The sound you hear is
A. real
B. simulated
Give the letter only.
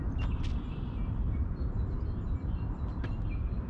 A